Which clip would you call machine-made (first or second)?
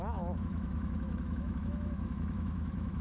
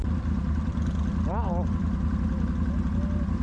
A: first